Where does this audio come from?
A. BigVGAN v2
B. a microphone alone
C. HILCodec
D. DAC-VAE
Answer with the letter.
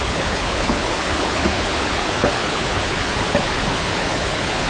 C